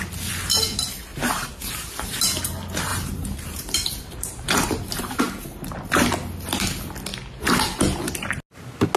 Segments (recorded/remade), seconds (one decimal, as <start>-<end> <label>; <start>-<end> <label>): 0.0-1.1 recorded; 1.1-2.2 remade; 2.2-2.9 recorded; 2.9-5.2 remade; 5.2-9.0 recorded